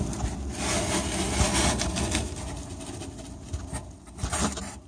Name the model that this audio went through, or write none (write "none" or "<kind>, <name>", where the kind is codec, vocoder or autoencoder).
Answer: none